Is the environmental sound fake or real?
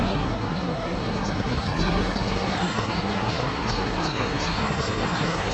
fake